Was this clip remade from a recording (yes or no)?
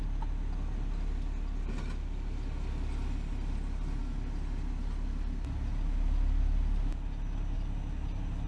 no